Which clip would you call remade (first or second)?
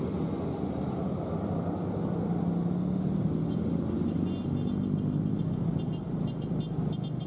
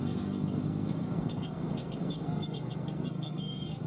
second